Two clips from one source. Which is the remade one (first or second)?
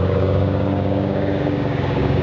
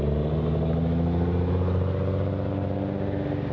first